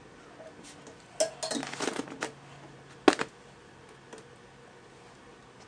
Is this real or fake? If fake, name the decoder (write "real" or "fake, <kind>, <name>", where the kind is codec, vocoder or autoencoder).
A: real